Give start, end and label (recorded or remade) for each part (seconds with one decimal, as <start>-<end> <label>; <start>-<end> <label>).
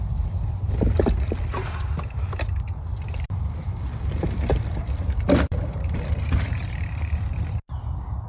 0.0-2.9 recorded; 2.9-7.0 remade; 7.0-8.3 recorded